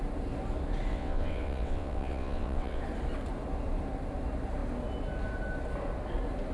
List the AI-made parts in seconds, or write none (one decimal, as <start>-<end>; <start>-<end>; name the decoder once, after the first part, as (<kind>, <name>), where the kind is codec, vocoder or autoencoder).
0.9-2.8 (vocoder, WaveNeXt)